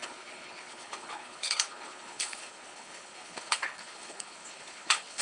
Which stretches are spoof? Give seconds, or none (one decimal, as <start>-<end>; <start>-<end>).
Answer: 0.0-5.2